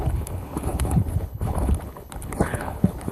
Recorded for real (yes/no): no